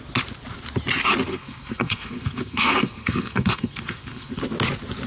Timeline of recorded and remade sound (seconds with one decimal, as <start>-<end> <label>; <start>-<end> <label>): 0.0-1.3 recorded; 1.3-4.4 remade; 4.4-5.1 recorded